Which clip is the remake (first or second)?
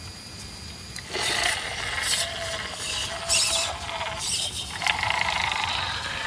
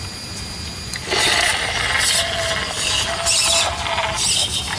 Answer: first